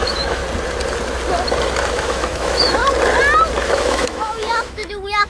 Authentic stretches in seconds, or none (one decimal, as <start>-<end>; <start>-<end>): 0.4-1.9; 2.8-3.7